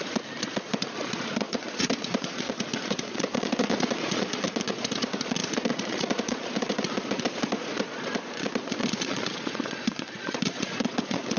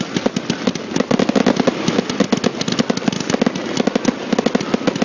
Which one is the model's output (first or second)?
first